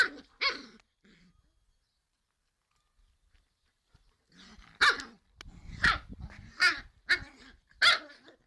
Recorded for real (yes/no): yes